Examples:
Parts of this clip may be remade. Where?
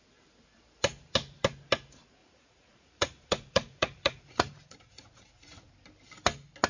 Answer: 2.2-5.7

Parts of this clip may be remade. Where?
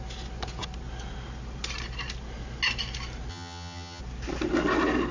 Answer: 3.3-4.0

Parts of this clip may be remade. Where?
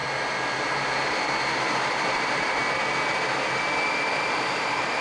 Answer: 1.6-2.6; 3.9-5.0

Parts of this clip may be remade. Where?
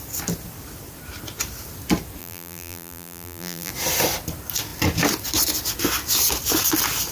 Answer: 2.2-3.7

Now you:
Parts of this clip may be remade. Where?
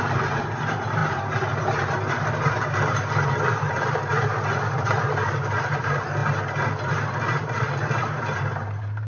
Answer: 0.0-6.2; 6.9-9.1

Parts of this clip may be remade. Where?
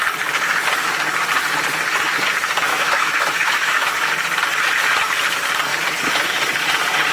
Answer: 2.7-4.1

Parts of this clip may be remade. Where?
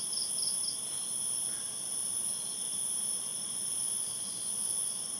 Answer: 3.3-5.2